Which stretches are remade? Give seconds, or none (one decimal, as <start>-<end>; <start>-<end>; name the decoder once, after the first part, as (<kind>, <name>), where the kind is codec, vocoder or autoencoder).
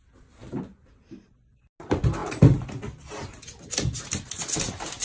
none